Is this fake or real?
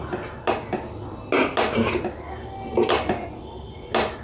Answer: real